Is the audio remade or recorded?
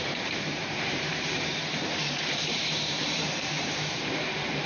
remade